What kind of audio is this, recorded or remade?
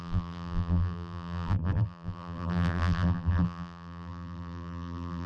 remade